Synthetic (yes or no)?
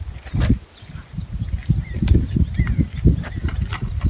yes